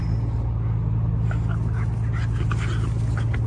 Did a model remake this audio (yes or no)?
no